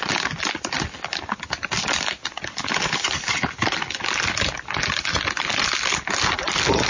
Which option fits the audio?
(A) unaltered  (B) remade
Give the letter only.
A